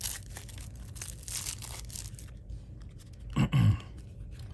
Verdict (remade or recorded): recorded